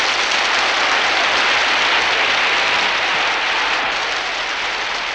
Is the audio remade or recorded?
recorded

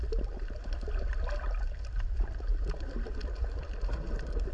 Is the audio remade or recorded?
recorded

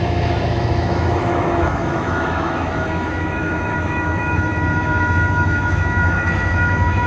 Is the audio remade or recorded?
remade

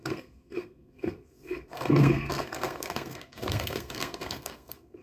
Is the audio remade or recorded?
remade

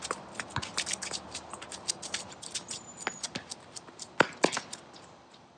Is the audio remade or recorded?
recorded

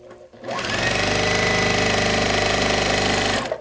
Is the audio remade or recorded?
recorded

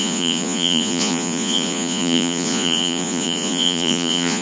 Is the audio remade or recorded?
remade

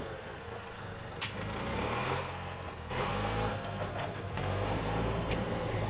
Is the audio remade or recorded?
remade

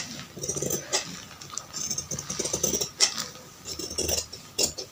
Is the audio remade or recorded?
recorded